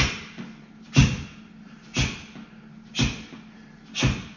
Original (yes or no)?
yes